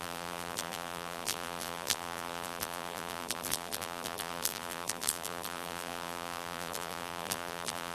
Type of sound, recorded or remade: remade